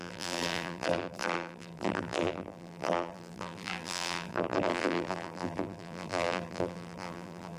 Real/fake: fake